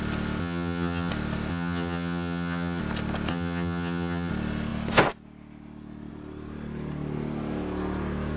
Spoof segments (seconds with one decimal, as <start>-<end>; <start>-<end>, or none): 0.4-1.1; 1.5-2.8; 3.3-4.3

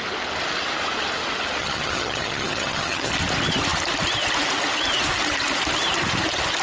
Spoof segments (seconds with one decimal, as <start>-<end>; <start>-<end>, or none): 1.6-3.1

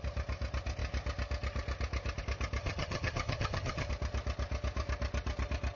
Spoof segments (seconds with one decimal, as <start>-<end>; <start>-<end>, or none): 2.6-3.9

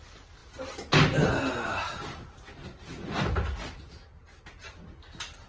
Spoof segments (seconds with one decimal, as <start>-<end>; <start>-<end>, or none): none

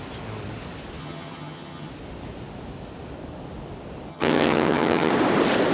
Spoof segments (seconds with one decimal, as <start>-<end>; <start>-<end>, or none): 1.0-1.9; 4.1-5.1

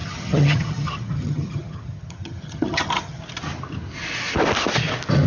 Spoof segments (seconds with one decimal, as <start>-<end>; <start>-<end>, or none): 0.0-3.2

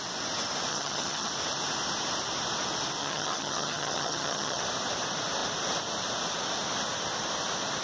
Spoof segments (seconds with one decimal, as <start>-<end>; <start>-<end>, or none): 0.7-1.3; 3.0-4.6